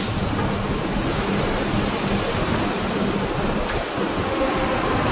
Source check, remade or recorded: recorded